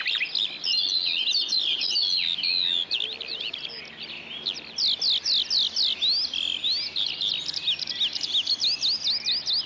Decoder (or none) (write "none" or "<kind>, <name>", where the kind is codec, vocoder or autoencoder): none